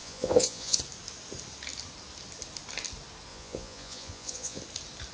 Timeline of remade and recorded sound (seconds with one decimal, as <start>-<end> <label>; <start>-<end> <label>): 0.0-0.8 remade; 0.8-3.3 recorded; 3.3-4.6 remade; 4.6-5.1 recorded